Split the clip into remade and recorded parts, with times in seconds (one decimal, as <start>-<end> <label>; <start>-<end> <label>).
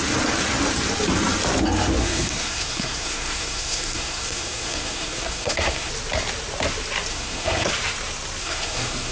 0.0-2.0 recorded; 2.0-5.9 remade; 5.9-7.1 recorded; 7.1-7.7 remade; 7.7-8.4 recorded; 8.4-9.1 remade